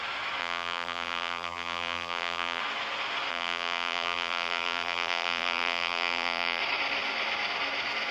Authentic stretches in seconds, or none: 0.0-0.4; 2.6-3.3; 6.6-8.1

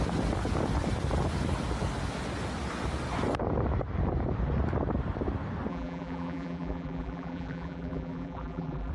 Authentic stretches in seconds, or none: 0.0-5.7

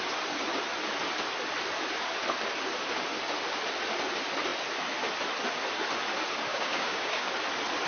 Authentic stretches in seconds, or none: 0.0-6.5; 7.3-7.9

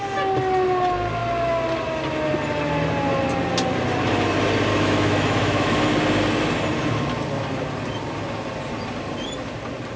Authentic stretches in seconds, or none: 0.0-4.7; 5.9-10.0

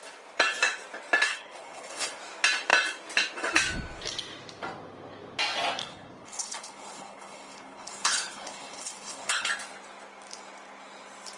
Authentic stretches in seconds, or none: 0.0-1.3; 2.2-5.8; 9.5-11.4

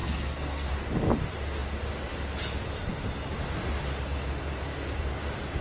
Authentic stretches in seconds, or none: 0.7-5.6